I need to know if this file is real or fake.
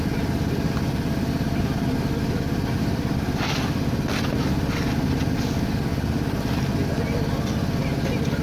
real